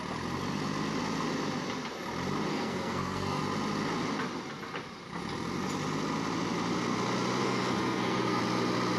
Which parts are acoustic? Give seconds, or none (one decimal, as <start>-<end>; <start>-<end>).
0.0-2.5; 3.4-7.4; 8.4-9.0